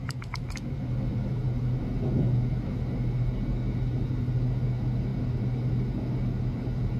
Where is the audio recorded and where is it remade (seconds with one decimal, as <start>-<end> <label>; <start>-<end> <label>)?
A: 0.0-7.0 recorded